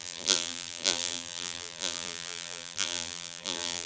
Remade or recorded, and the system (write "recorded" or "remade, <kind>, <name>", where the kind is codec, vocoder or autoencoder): remade, vocoder, BigVGAN v2